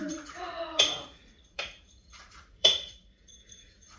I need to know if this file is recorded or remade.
remade